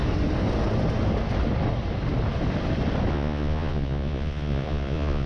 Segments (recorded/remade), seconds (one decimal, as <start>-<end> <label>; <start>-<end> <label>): 0.0-3.1 recorded; 3.1-5.3 remade